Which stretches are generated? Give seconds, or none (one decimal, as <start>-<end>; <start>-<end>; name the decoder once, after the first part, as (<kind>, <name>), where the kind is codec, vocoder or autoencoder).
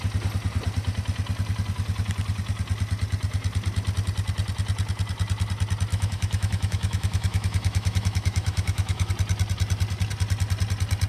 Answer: 5.9-9.1 (autoencoder, DAC-VAE)